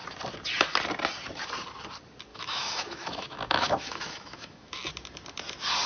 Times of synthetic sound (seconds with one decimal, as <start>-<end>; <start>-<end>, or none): 2.3-4.9